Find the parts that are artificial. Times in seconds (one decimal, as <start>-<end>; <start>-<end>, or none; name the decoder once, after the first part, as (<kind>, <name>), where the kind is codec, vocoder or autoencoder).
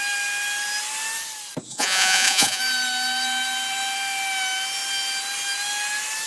1.7-2.6 (vocoder, Vocos)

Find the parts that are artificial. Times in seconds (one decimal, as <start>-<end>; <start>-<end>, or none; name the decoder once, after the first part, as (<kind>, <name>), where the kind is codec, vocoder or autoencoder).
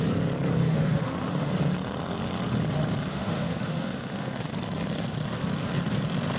0.6-1.5 (autoencoder, DAC-VAE); 3.1-4.5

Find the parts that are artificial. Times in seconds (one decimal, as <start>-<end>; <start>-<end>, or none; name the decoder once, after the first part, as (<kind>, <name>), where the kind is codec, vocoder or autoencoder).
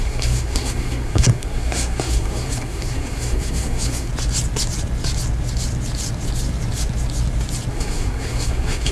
0.0-4.1 (codec, SNAC); 7.7-8.9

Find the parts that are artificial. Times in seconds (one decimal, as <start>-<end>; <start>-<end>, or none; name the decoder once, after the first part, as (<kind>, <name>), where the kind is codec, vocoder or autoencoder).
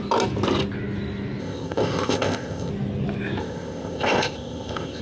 1.4-2.7 (codec, ZipCodec); 3.4-5.0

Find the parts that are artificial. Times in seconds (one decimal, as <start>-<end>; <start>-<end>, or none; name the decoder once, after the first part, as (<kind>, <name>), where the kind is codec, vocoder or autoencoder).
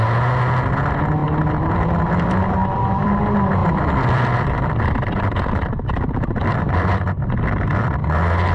2.6-3.2 (vocoder, BigVGAN v2); 3.6-7.3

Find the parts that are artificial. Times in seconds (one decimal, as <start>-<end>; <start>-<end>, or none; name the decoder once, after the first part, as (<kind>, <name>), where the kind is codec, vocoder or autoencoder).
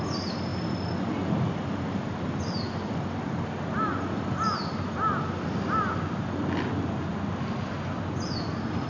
none